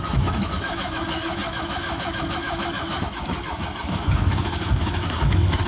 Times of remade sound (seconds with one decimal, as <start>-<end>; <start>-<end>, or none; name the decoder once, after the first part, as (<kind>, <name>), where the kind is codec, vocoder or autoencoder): 0.0-5.7 (autoencoder, DAC-VAE)